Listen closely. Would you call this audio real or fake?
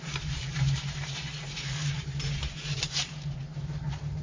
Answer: fake